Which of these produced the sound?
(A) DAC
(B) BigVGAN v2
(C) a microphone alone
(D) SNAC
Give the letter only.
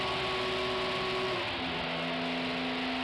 C